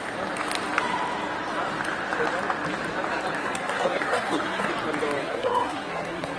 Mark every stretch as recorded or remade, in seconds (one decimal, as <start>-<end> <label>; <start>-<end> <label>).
0.0-3.4 recorded; 3.4-4.7 remade; 4.7-5.2 recorded; 5.2-6.4 remade